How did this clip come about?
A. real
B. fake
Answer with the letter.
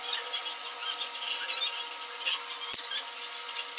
A